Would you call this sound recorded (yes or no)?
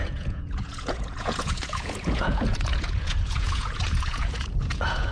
no